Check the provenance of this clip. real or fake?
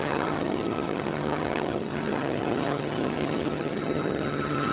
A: fake